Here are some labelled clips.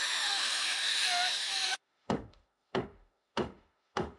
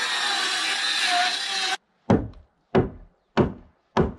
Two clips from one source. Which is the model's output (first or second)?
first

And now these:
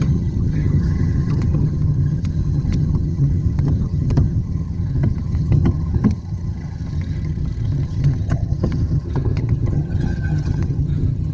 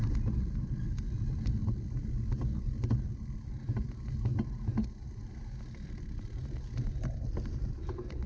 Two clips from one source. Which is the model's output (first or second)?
first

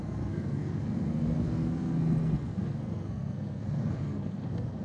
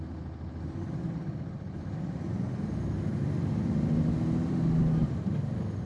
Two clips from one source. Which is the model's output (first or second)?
first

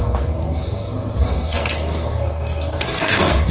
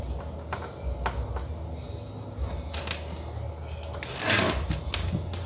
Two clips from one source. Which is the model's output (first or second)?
first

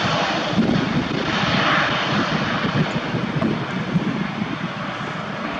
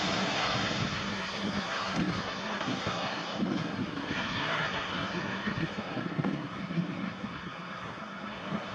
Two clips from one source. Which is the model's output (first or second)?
second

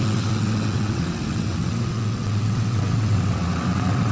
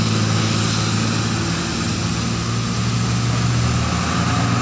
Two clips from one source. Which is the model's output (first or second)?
first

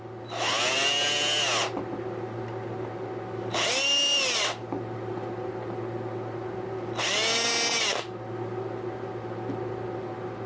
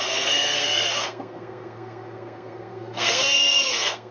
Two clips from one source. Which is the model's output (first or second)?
second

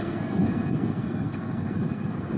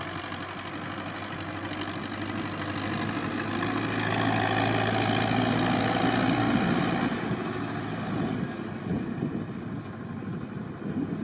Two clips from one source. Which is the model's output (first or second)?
first